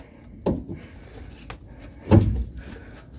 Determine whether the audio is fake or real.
real